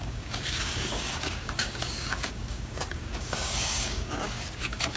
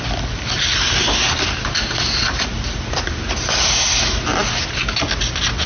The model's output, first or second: first